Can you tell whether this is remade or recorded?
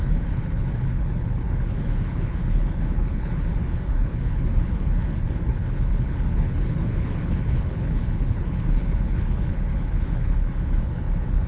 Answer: remade